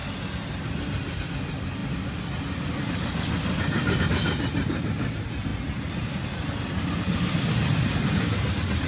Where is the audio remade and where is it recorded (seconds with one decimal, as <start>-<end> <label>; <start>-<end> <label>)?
0.0-8.9 recorded